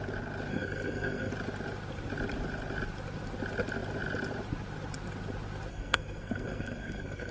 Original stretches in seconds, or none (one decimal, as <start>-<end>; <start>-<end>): 0.0-0.5; 1.3-5.7